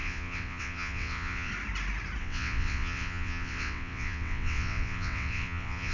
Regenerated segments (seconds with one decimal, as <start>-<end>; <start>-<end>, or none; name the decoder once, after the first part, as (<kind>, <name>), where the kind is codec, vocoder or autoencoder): 0.0-1.5 (vocoder, WaveNeXt); 2.2-5.9